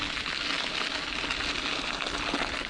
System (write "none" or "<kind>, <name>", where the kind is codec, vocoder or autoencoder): none